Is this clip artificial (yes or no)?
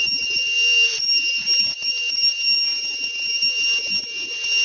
no